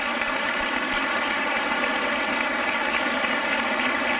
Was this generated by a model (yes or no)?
no